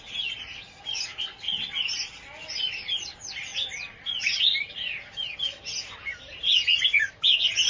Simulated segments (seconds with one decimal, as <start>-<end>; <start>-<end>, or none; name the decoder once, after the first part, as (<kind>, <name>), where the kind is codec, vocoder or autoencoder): none